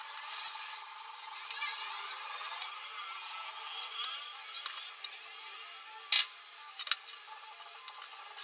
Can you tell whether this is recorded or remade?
recorded